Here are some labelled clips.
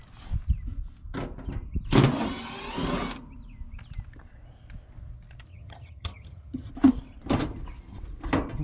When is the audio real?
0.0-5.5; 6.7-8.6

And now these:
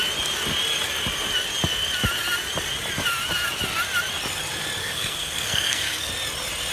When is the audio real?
0.0-4.8; 6.1-6.7

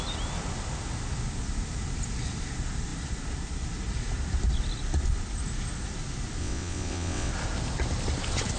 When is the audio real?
0.0-6.4; 7.3-8.6

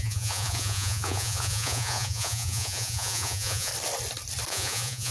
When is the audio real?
3.7-4.5

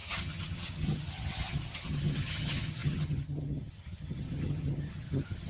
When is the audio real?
none